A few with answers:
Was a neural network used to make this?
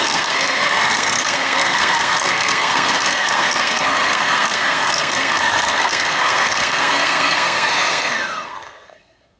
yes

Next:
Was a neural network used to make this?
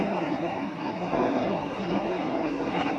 yes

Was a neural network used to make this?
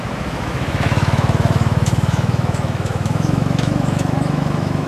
yes